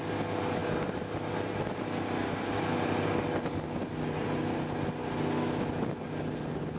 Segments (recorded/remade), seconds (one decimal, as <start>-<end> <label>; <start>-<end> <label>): 0.0-6.8 recorded